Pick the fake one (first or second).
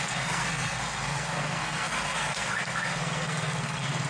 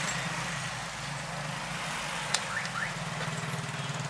first